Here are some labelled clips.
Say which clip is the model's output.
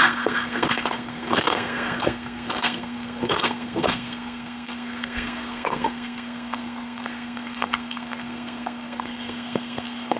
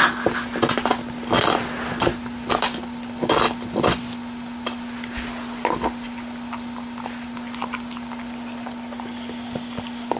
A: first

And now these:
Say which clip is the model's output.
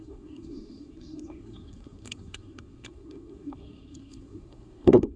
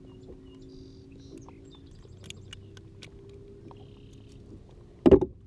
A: first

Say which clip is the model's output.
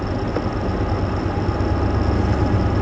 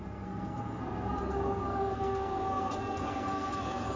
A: second